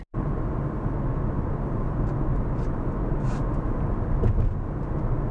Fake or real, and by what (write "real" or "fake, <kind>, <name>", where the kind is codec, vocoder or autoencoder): real